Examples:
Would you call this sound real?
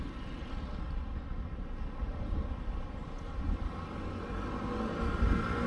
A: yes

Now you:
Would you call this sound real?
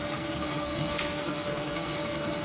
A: no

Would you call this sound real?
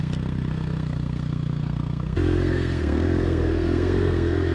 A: no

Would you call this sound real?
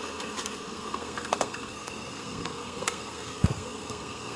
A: no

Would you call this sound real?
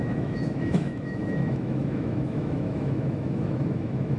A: no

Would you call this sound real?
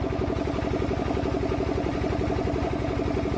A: yes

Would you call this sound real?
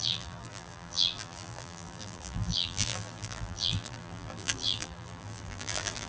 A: no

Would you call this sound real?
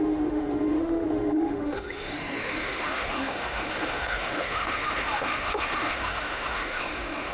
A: no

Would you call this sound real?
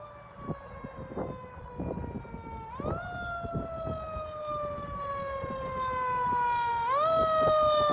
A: yes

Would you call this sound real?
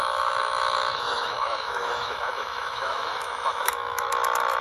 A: no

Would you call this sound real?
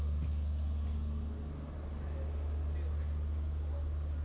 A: yes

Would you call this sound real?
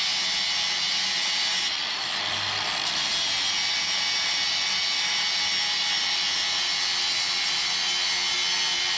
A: yes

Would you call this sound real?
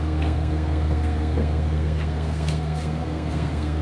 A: no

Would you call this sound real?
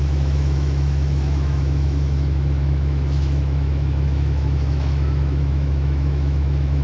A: no